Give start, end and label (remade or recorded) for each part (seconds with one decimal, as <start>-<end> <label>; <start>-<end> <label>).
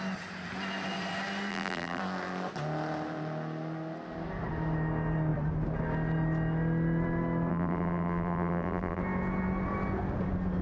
0.0-1.5 recorded; 1.5-2.0 remade; 2.0-7.5 recorded; 7.5-9.0 remade; 9.0-10.6 recorded